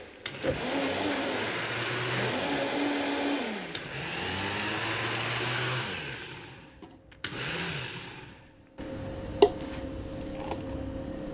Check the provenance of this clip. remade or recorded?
recorded